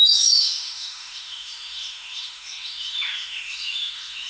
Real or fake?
fake